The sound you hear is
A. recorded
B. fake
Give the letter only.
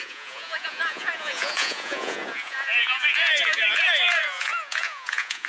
B